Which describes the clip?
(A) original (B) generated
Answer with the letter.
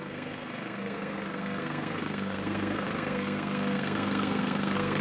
B